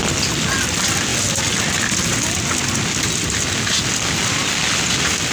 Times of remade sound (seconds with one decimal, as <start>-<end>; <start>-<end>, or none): none